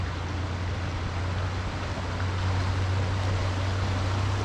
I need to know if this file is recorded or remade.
recorded